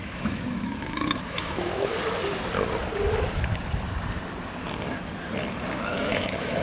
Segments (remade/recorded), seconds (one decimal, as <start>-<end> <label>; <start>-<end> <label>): 0.0-1.9 remade; 1.9-5.9 recorded; 5.9-6.6 remade

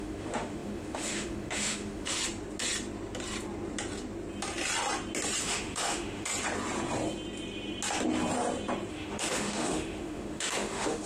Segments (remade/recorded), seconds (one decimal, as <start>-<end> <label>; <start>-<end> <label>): 0.0-2.2 remade; 2.2-5.4 recorded; 5.4-6.3 remade; 6.3-8.9 recorded; 8.9-11.1 remade

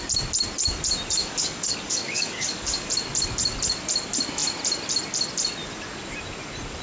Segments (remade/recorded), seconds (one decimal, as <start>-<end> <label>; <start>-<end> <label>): 0.0-1.2 recorded; 1.2-2.9 remade; 2.9-6.8 recorded

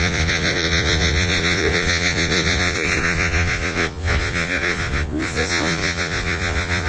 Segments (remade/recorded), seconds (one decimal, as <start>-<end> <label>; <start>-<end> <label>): 0.0-6.9 remade

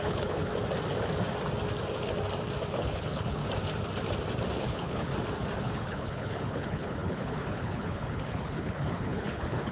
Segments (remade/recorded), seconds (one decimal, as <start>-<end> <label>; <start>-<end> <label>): 0.0-0.5 remade; 0.5-2.7 recorded; 2.7-3.4 remade; 3.4-4.6 recorded; 4.6-5.1 remade; 5.1-5.6 recorded; 5.6-9.7 remade